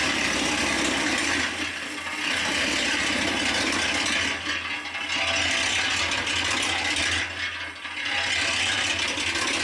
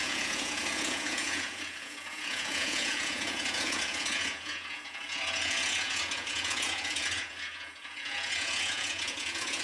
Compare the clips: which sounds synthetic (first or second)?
second